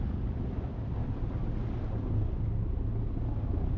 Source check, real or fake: real